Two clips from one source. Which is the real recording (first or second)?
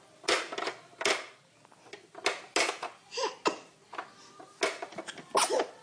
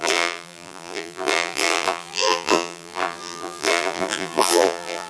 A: first